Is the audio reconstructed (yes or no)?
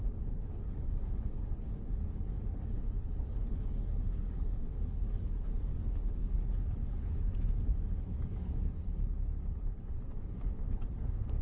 yes